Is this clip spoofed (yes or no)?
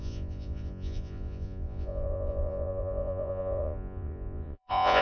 yes